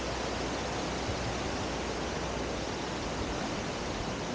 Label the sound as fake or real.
real